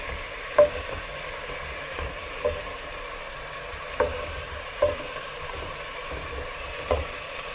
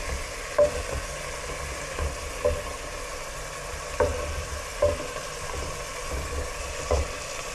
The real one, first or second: second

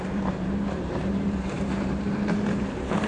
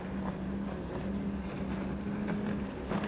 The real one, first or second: second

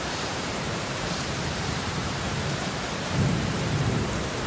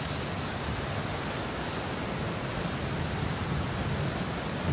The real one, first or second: second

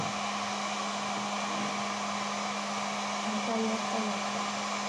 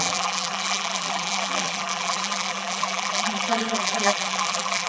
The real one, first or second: first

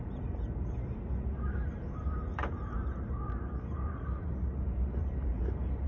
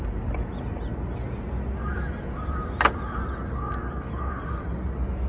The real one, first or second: second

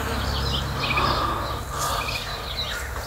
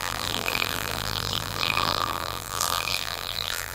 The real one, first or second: first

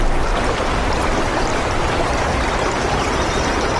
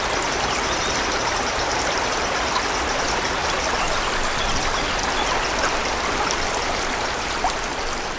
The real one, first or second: second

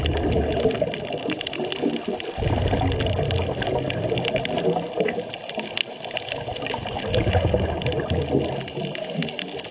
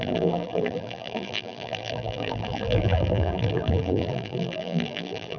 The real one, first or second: first